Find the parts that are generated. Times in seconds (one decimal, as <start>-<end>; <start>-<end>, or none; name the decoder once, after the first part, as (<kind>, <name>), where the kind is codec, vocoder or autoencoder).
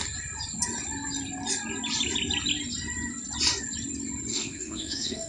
4.3-5.3 (autoencoder, DAC-VAE)